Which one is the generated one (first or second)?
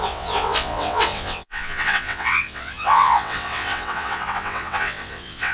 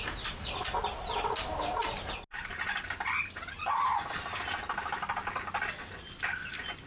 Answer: first